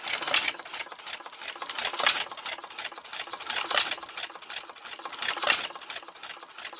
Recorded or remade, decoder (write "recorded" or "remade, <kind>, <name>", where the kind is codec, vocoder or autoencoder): recorded